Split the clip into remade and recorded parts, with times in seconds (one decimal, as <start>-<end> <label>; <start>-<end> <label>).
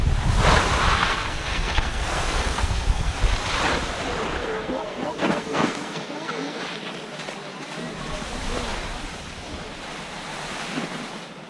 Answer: 0.0-0.9 recorded; 0.9-3.2 remade; 3.2-4.4 recorded; 4.4-6.6 remade; 6.6-11.5 recorded